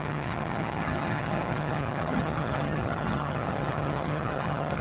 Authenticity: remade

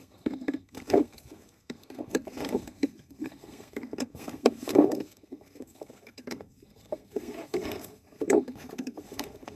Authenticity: remade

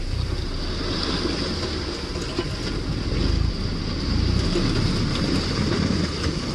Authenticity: recorded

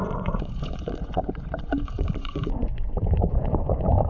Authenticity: remade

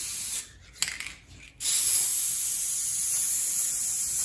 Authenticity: recorded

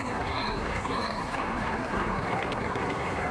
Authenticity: remade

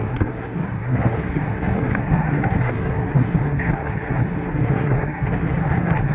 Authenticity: remade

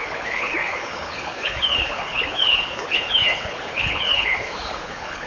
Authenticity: remade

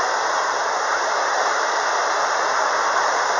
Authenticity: recorded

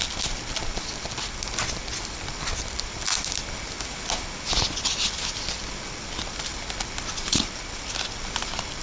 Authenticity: recorded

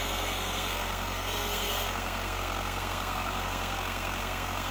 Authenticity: remade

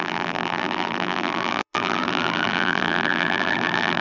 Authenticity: remade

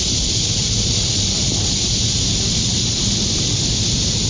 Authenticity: recorded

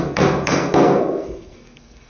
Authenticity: remade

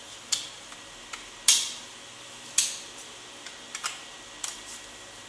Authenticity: recorded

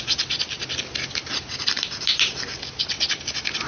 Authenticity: recorded